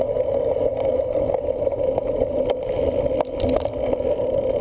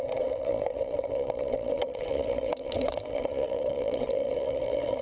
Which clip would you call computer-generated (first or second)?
second